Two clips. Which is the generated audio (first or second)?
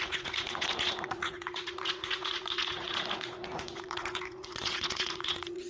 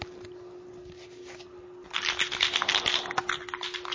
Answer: first